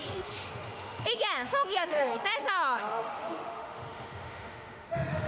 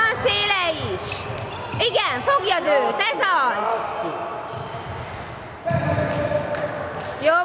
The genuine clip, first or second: second